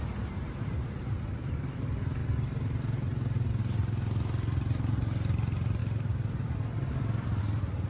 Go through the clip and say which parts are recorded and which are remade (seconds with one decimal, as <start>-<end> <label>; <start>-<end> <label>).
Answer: 0.0-7.9 recorded